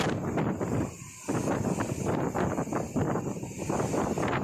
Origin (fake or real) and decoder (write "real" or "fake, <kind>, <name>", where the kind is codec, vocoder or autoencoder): real